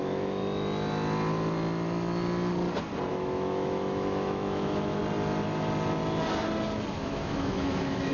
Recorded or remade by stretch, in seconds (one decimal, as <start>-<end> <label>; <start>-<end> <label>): 0.0-0.4 remade; 0.4-3.1 recorded; 3.1-5.0 remade; 5.0-6.9 recorded; 6.9-8.1 remade